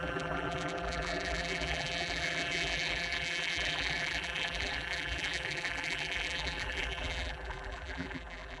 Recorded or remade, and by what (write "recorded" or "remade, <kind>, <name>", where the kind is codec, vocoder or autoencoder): remade, vocoder, BigVGAN v2